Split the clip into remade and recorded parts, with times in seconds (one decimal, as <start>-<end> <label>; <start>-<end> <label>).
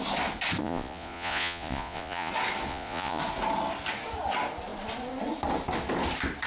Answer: 0.0-0.6 recorded; 0.6-2.3 remade; 2.3-2.7 recorded; 2.7-3.2 remade; 3.2-6.5 recorded